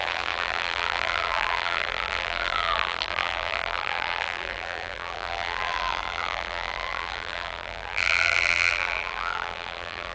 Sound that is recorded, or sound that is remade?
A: remade